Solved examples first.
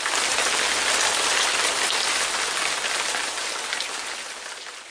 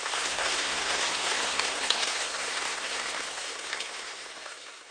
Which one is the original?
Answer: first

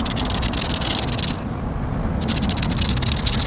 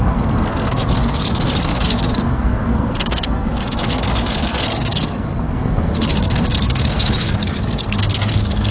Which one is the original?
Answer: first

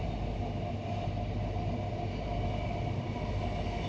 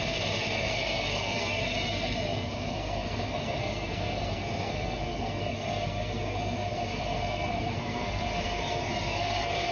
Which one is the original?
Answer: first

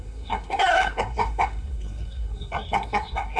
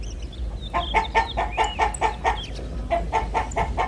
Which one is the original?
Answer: second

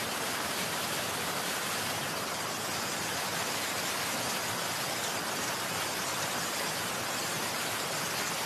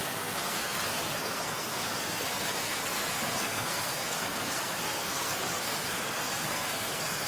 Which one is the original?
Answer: first